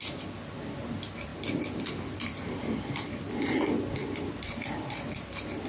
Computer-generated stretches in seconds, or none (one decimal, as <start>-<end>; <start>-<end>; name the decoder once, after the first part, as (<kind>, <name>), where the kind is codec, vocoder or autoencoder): none